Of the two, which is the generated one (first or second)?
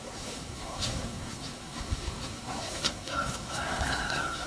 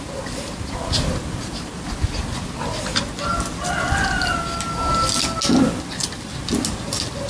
first